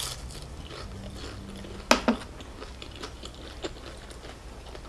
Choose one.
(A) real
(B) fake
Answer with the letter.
A